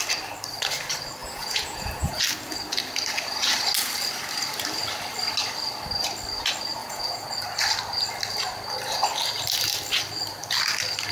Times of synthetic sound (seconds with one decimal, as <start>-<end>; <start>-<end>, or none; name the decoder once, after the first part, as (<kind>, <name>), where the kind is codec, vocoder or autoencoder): 1.2-2.2 (vocoder, Vocos); 6.8-7.3